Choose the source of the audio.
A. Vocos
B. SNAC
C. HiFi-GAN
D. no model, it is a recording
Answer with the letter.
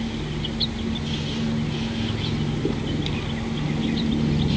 D